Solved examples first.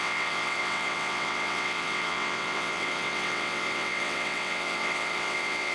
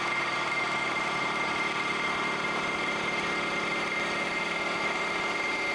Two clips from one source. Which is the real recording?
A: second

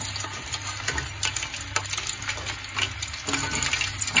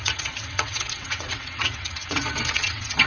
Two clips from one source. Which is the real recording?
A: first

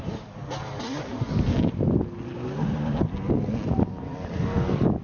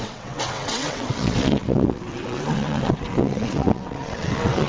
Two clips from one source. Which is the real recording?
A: first